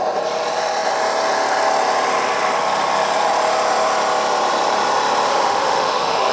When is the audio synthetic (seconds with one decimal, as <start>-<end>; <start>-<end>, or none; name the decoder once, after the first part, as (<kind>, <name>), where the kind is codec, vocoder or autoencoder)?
5.3-6.3 (autoencoder, DAC-VAE)